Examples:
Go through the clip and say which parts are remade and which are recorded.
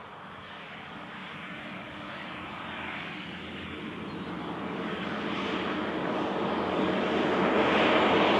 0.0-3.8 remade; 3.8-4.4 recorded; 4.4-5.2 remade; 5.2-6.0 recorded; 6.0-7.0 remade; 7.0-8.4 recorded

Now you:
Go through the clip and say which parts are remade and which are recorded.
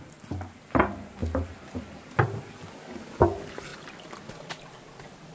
0.0-5.3 recorded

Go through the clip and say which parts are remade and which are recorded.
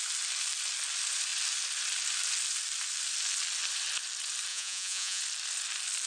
0.0-4.5 recorded; 4.5-5.2 remade; 5.2-6.1 recorded